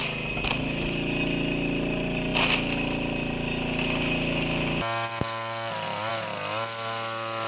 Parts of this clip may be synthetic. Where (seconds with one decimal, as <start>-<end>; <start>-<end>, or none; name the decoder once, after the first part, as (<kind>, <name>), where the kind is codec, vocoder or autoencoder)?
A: none

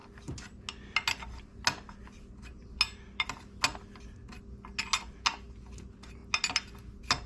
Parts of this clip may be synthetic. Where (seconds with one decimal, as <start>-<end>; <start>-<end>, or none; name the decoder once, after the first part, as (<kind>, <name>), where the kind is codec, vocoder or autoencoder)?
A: none

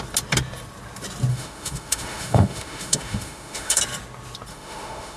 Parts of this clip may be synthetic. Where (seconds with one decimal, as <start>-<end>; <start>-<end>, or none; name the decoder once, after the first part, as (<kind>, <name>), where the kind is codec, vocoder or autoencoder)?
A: 1.3-3.8 (autoencoder, DAC-VAE); 4.5-5.2

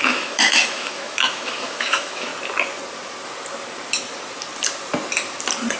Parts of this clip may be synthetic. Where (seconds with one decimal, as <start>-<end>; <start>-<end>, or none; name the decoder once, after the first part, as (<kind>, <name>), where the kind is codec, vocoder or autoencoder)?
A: 0.0-2.3 (autoencoder, DAC-VAE)